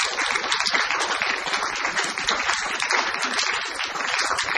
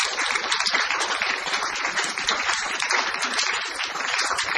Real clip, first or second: first